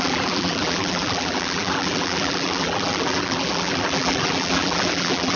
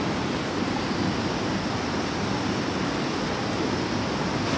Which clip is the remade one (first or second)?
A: first